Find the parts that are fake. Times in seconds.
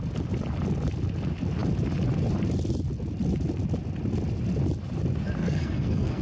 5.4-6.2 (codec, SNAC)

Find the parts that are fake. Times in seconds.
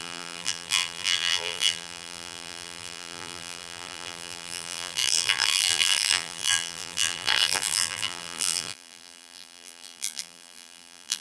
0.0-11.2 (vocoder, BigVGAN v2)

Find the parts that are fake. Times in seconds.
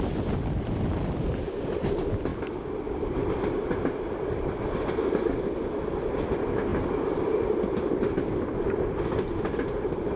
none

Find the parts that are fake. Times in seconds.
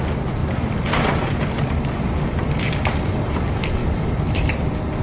0.4-1.2 (vocoder, BigVGAN v2); 3.8-4.5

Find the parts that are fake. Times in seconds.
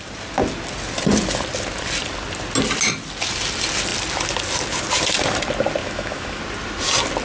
5.8-6.4 (autoencoder, DAC-VAE)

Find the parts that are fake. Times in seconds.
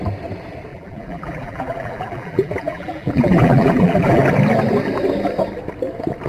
0.7-4.2 (vocoder, BigVGAN v2)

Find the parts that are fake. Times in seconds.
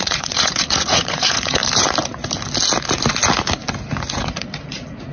0.0-1.6 (vocoder, Vocos); 4.0-5.1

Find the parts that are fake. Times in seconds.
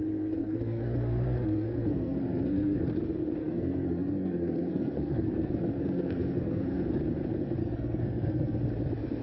0.4-2.8 (codec, SNAC); 3.4-7.0; 7.6-8.6